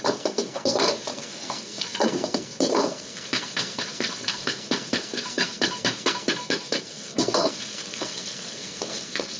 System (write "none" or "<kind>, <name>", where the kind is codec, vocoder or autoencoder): codec, SNAC